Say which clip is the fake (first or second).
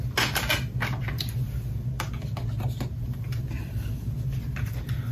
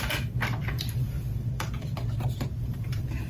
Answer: second